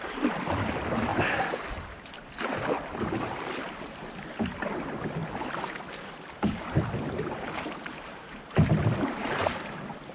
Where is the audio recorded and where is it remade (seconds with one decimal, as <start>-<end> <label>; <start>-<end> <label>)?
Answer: 0.0-10.1 remade